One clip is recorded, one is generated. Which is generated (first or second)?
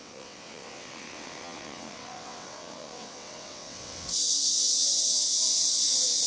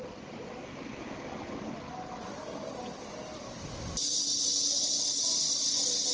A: first